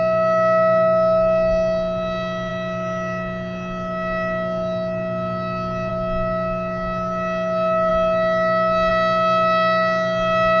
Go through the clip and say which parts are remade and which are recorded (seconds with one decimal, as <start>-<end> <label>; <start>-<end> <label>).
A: 0.0-10.6 recorded